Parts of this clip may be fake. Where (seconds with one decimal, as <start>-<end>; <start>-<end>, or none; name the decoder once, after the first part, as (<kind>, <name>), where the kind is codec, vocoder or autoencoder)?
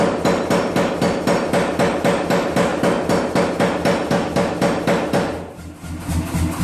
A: none